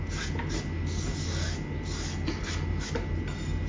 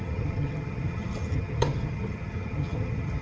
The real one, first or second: first